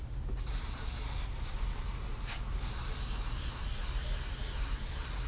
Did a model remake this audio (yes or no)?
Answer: no